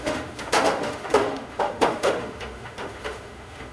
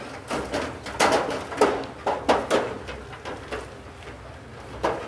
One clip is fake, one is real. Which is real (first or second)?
second